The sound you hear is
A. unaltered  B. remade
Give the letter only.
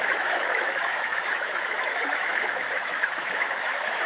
B